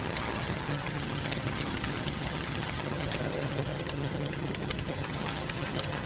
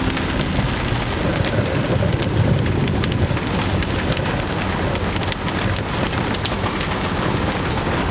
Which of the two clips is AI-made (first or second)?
first